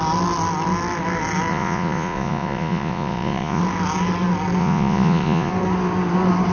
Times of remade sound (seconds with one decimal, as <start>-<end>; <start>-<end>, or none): 1.5-3.6; 4.6-5.5